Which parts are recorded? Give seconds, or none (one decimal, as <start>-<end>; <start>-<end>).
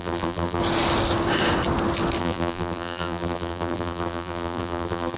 0.6-2.2